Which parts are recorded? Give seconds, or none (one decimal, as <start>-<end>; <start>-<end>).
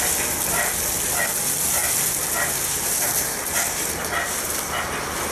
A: 0.0-5.3